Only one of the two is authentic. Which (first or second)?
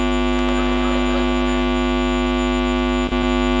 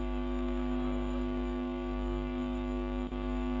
first